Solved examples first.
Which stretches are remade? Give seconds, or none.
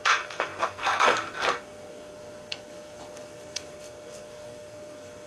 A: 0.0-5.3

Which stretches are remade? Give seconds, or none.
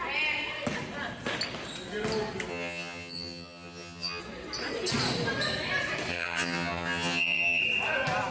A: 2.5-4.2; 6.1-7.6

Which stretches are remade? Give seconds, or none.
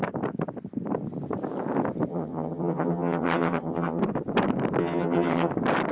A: 2.1-4.0; 4.8-5.5